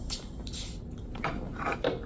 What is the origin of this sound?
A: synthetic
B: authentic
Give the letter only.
B